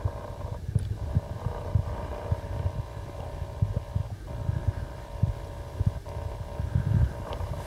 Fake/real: real